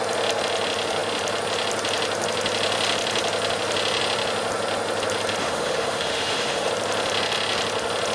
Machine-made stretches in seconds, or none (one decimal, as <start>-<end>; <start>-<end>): 5.4-6.7